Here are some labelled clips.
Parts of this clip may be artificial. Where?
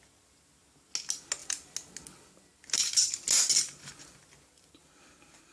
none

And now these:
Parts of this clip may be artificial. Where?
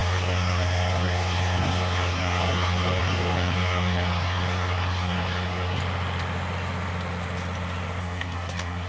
0.0-5.8 (codec, SNAC); 8.0-8.9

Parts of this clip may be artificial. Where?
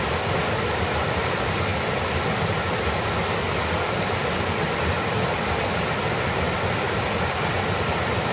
none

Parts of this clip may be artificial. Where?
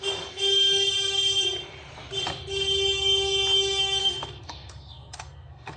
4.0-5.8 (codec, SNAC)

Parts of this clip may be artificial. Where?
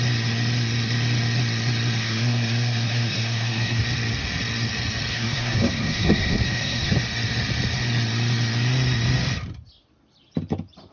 2.0-3.8 (codec, SNAC); 5.1-6.9